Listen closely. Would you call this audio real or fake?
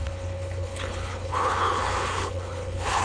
fake